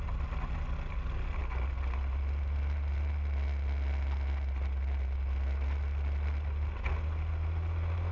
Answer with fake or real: real